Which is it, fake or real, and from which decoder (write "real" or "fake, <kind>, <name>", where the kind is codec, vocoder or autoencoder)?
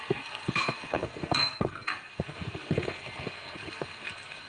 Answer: fake, codec, SNAC